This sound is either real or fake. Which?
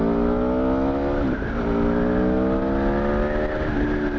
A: real